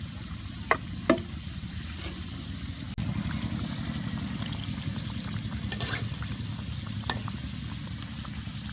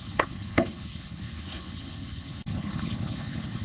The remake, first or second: second